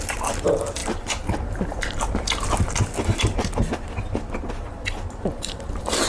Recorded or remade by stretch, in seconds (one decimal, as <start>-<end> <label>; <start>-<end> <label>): 0.0-6.1 recorded